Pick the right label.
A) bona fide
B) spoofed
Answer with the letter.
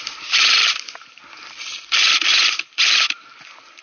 A